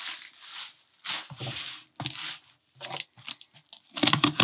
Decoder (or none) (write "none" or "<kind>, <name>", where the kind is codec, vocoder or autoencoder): none